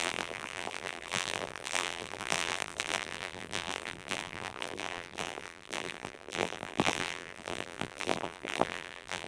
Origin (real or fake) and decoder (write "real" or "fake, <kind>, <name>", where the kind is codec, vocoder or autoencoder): fake, vocoder, BigVGAN v2